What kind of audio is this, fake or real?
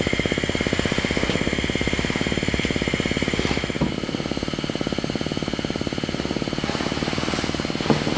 real